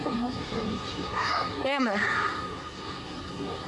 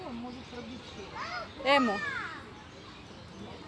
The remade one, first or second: first